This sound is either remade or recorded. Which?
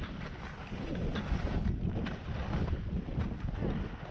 recorded